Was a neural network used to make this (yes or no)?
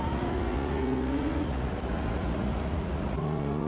yes